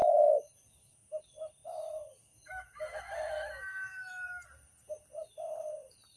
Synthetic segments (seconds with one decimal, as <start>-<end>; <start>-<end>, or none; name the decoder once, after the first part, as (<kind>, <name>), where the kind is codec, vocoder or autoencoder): 0.0-1.2 (autoencoder, DAC-VAE); 1.6-4.4